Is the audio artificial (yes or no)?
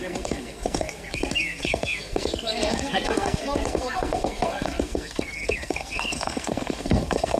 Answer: yes